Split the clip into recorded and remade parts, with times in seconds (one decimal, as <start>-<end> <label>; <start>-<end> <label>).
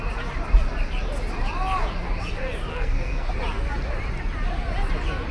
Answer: 0.0-2.7 recorded; 2.7-3.3 remade; 3.3-5.3 recorded